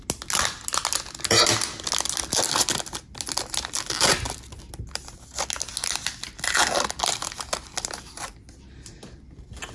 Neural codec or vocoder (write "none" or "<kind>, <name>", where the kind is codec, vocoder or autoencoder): none